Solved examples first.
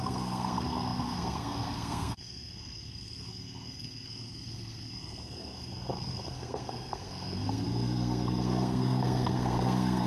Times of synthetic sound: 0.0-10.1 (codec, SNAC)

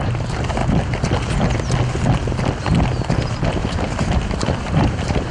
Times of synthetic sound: 0.0-0.6 (vocoder, BigVGAN v2); 3.5-5.3

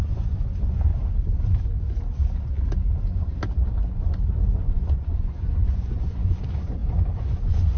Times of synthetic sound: 0.0-0.9 (vocoder, Vocos); 4.4-7.8

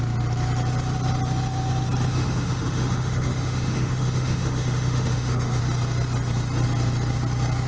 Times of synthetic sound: 2.1-5.6 (autoencoder, DAC-VAE)